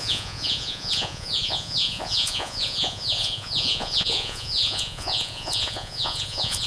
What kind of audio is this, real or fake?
fake